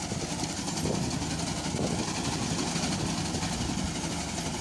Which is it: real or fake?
real